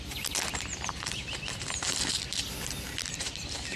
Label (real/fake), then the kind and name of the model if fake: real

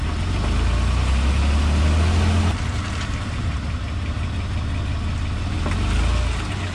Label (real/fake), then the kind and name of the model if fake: real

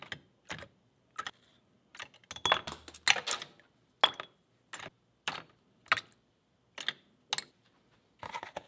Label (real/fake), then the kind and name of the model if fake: real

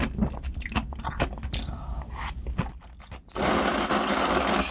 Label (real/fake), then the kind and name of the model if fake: real